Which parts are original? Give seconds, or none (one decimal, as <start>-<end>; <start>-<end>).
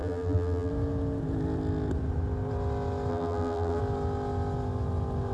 0.7-3.1; 3.8-5.3